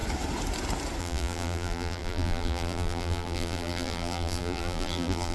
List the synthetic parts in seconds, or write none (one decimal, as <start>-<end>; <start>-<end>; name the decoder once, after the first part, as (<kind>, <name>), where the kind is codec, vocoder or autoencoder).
1.0-5.3 (vocoder, BigVGAN v2)